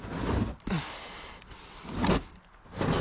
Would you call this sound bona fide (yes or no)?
yes